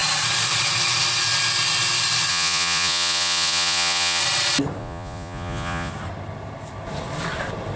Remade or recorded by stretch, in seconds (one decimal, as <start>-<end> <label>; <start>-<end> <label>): 0.0-2.3 recorded; 2.3-4.2 remade; 4.2-4.8 recorded; 4.8-5.9 remade; 5.9-7.8 recorded